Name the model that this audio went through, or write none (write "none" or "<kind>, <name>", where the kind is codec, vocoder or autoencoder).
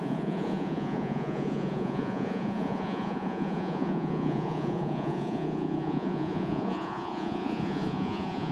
vocoder, Vocos